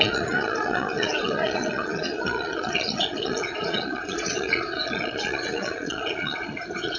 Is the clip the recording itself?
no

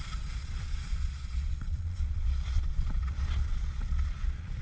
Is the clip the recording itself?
no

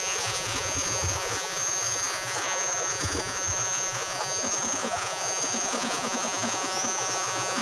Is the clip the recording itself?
no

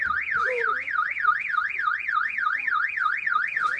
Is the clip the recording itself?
no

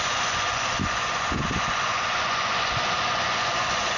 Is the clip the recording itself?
no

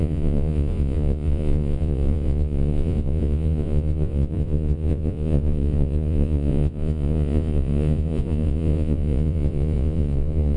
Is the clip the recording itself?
no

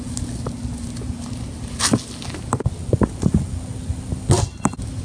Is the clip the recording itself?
yes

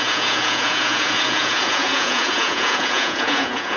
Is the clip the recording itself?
no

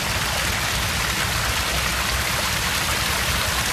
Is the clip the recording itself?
yes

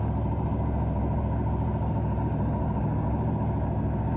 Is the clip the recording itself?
yes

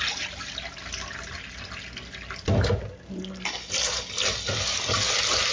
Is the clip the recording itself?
yes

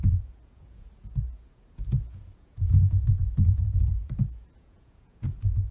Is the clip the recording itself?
no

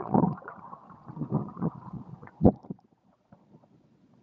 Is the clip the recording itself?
no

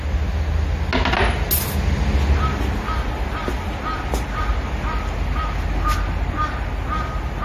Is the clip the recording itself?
yes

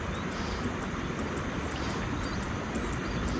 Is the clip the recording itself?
yes